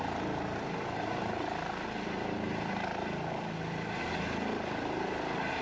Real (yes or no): yes